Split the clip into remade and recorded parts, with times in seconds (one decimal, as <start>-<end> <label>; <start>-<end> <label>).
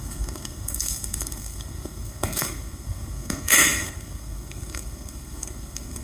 0.0-6.0 remade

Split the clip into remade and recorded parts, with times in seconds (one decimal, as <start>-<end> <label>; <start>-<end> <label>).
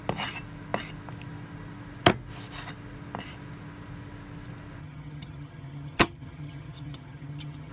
0.0-4.8 recorded; 4.8-7.7 remade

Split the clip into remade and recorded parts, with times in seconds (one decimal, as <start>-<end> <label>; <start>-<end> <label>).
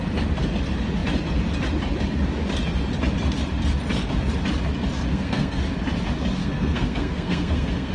0.0-5.1 recorded; 5.1-5.6 remade; 5.6-6.4 recorded; 6.4-7.9 remade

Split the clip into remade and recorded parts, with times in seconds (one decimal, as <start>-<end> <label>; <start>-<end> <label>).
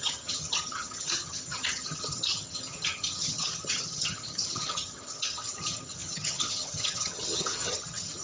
0.0-8.2 remade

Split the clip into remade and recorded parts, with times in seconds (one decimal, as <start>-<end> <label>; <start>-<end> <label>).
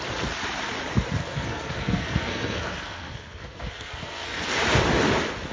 0.0-1.2 recorded; 1.2-4.5 remade; 4.5-5.5 recorded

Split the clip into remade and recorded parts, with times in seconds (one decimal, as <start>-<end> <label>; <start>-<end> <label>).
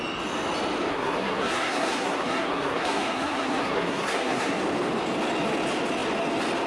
0.0-0.9 recorded; 0.9-4.6 remade; 4.6-6.7 recorded